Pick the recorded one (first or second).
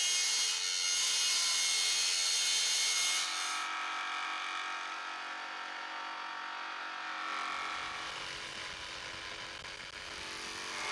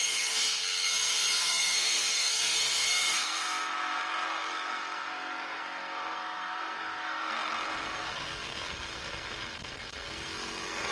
first